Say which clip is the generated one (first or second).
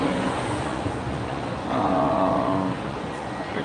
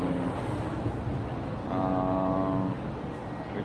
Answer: first